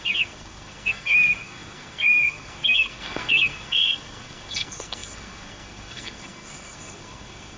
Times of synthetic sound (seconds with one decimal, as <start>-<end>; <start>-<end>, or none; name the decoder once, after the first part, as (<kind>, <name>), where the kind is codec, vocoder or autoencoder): 0.0-7.6 (codec, SNAC)